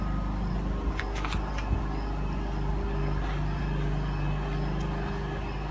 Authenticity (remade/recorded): recorded